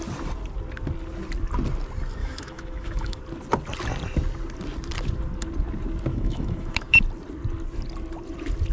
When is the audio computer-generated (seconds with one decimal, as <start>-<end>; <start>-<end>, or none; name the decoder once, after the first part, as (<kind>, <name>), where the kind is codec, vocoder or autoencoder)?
2.2-3.2 (autoencoder, DAC-VAE); 6.1-7.0

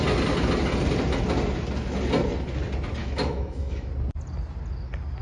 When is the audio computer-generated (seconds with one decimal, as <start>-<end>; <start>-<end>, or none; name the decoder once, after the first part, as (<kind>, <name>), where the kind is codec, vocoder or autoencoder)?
3.0-3.9 (autoencoder, DAC-VAE)